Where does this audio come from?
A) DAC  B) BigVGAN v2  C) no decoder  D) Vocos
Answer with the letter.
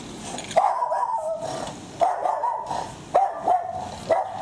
C